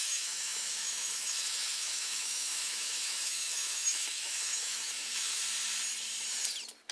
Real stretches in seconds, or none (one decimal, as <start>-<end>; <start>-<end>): 5.4-6.9